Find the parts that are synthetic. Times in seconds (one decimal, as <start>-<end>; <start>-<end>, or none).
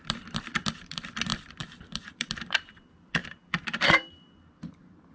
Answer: 0.0-5.1